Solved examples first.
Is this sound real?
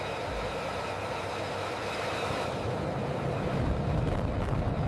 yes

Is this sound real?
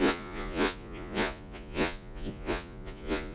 no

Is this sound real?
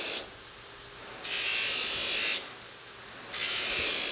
yes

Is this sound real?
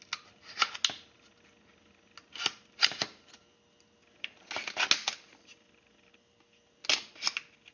yes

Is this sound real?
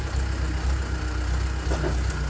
yes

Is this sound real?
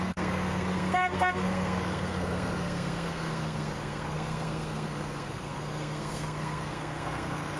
no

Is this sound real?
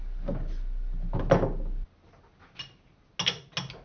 yes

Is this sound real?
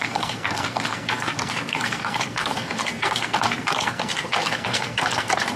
no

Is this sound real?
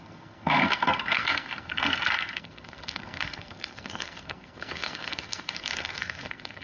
no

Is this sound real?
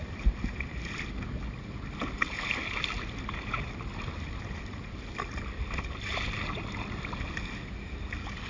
yes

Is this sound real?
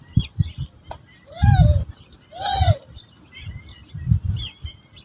yes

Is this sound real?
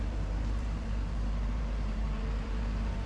no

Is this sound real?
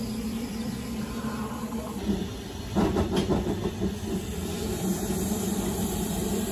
no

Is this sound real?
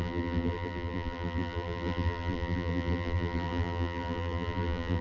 no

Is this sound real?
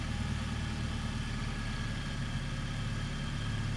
yes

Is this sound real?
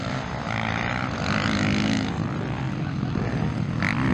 yes